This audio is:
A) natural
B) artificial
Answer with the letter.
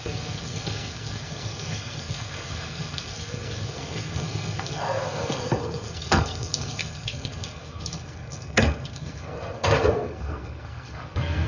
B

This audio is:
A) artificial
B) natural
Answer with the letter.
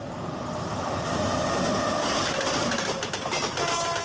B